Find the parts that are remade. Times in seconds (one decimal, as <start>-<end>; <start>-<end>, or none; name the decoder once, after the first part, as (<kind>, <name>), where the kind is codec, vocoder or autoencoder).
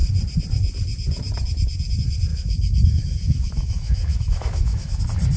2.3-5.0 (autoencoder, DAC-VAE)